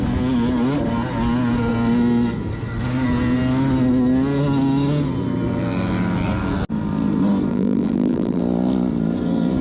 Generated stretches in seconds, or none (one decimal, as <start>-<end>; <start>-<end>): 7.5-8.4